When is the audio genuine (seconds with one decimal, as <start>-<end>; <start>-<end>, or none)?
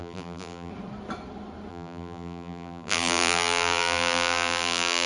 0.7-1.7